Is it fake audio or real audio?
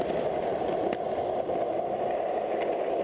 real